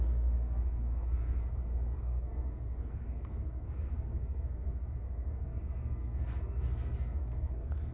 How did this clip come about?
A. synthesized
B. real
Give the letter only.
A